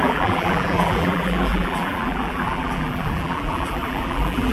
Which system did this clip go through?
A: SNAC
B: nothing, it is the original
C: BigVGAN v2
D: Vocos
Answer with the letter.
C